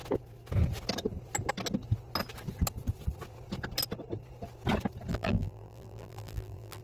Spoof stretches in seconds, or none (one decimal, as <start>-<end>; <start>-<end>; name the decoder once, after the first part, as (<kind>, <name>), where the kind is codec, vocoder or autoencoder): 5.1-6.8 (vocoder, BigVGAN v2)